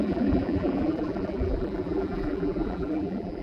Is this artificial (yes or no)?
yes